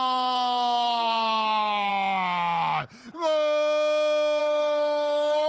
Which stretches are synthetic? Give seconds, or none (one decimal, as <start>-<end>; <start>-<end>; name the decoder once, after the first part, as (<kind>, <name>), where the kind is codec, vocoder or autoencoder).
0.0-1.9 (codec, SNAC); 4.4-5.5